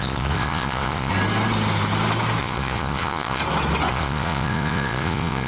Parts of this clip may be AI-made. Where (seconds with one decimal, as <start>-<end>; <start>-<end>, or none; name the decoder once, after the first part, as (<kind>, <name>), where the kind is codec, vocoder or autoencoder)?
0.0-1.1 (vocoder, Vocos); 2.4-3.4; 3.9-5.5